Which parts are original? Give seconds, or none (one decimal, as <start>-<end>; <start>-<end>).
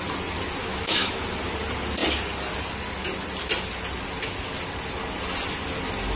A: 0.0-0.6; 1.2-6.2